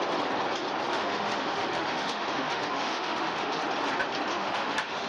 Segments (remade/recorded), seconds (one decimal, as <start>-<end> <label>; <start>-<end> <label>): 0.0-0.9 recorded; 0.9-3.6 remade; 3.6-4.3 recorded; 4.3-5.1 remade